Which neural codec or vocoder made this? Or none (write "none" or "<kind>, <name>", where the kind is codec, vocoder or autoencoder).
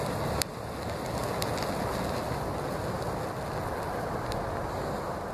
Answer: none